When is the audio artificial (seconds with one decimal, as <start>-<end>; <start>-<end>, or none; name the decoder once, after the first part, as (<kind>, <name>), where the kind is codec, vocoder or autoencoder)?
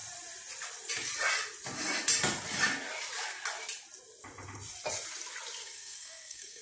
5.6-6.6 (codec, SNAC)